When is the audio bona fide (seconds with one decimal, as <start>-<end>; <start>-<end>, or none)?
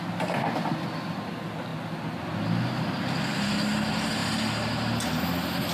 0.0-5.7